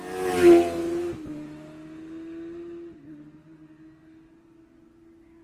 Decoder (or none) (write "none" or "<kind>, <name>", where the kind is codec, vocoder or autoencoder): none